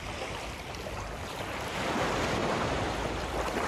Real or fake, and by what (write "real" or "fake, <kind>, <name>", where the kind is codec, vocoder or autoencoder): fake, vocoder, BigVGAN v2